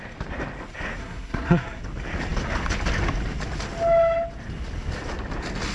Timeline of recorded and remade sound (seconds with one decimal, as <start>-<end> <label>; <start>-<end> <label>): 0.0-1.0 recorded; 1.0-1.8 remade; 1.8-5.7 recorded